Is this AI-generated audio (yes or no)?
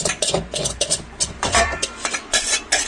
yes